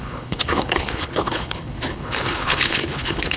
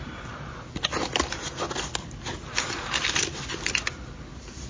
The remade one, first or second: first